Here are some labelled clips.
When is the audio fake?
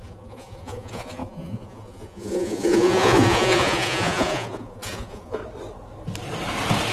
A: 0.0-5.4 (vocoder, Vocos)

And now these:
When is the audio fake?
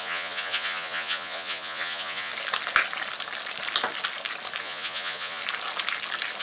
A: 0.0-2.3 (vocoder, Vocos); 4.6-5.4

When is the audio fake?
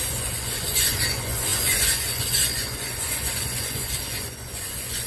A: 0.0-5.1 (vocoder, Vocos)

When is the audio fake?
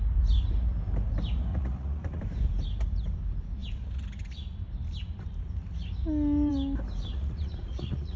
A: 1.5-2.2 (vocoder, Vocos); 7.1-8.2